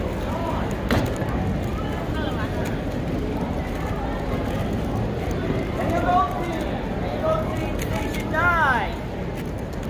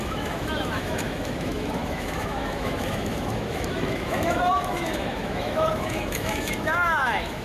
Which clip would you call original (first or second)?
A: first